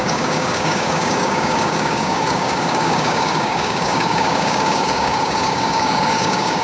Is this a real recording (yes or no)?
no